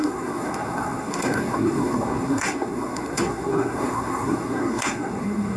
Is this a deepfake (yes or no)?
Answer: yes